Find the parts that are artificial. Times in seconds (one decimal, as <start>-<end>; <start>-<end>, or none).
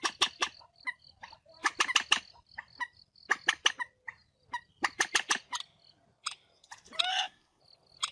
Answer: 7.1-7.6